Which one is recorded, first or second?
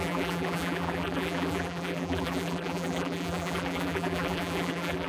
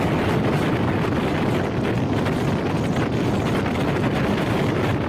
second